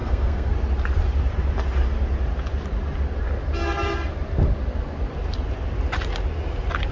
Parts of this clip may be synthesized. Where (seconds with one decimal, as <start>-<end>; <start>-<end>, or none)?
0.0-0.5